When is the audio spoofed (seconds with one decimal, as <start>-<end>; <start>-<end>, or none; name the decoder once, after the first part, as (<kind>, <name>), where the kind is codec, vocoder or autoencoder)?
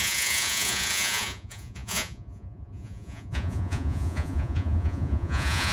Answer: 0.0-5.7 (vocoder, Vocos)